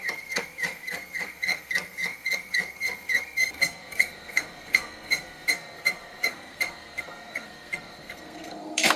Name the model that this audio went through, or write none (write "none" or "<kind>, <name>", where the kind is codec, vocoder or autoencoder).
codec, SNAC